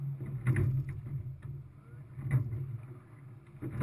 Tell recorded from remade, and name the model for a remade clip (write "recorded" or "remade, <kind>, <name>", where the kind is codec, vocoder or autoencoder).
recorded